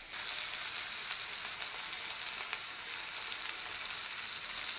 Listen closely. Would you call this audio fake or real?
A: real